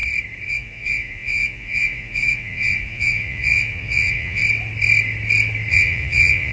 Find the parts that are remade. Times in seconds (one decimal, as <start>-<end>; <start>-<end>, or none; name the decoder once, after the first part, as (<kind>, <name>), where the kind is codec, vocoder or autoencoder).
0.5-4.4 (vocoder, Vocos); 5.7-6.5